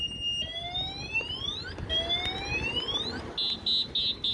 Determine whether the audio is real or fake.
real